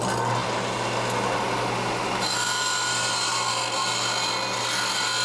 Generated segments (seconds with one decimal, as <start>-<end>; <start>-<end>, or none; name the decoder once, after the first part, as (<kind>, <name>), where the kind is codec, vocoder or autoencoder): none